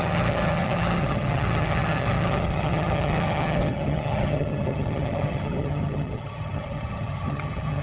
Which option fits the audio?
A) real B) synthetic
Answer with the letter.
B